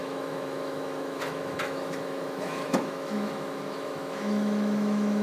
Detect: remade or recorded remade